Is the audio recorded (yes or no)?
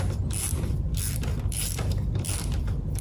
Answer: no